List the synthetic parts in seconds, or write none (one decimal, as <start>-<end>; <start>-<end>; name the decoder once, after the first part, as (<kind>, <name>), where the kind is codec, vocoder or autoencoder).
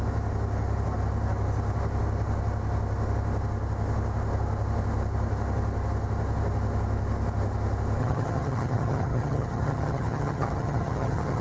8.0-11.4 (vocoder, HiFi-GAN)